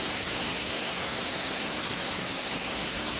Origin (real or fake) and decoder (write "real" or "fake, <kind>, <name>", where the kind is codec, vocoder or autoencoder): fake, codec, SNAC